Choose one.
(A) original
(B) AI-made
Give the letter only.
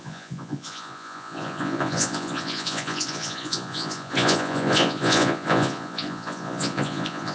B